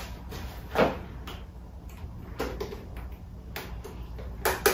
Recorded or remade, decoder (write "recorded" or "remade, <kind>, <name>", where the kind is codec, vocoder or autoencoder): recorded